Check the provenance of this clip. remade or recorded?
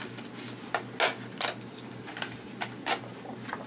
recorded